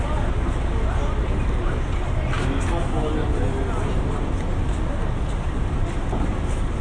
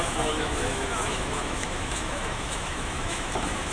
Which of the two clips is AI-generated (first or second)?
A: second